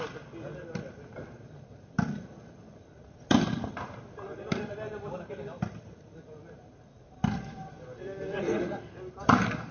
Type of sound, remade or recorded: recorded